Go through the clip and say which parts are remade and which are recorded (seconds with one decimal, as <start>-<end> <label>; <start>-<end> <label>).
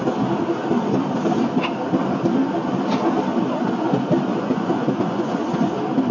0.0-4.3 recorded; 4.3-5.4 remade; 5.4-6.1 recorded